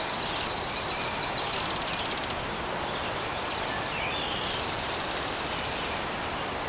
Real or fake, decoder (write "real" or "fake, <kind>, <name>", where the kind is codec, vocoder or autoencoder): real